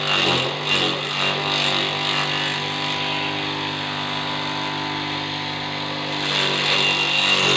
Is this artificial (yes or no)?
no